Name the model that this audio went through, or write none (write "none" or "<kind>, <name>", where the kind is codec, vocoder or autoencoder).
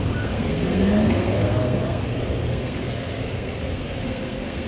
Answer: codec, SNAC